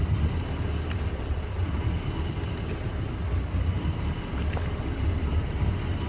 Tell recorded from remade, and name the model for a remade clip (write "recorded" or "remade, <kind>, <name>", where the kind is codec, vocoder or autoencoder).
recorded